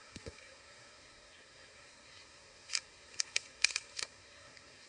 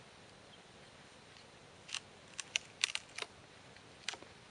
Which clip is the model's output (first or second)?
first